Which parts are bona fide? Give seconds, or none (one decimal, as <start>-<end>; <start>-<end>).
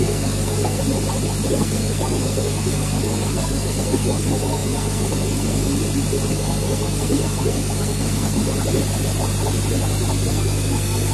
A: 0.8-1.5; 5.7-6.3; 8.4-10.3